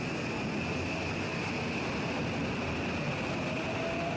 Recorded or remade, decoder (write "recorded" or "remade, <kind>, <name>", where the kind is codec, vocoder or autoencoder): recorded